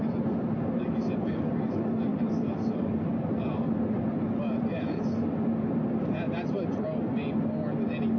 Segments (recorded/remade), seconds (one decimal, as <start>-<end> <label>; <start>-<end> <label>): 0.0-2.1 recorded; 2.1-5.0 remade; 5.0-8.2 recorded